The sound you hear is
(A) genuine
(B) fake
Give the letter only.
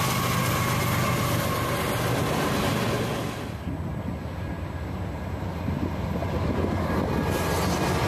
A